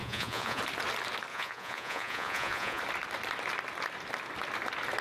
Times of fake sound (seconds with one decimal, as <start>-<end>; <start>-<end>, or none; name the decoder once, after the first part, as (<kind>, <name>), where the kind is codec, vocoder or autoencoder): 0.0-0.6 (vocoder, Vocos); 1.3-2.8